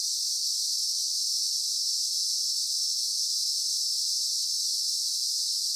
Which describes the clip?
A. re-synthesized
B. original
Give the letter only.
B